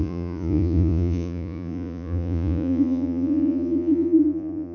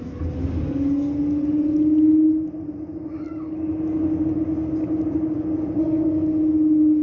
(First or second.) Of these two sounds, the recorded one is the second